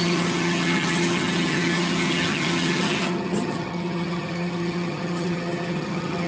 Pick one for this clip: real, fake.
fake